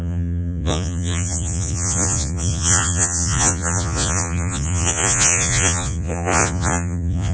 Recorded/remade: remade